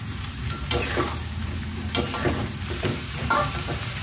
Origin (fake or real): fake